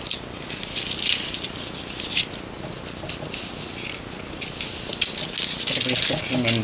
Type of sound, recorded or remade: recorded